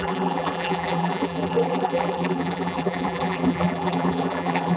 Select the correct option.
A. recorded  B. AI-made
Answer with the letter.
B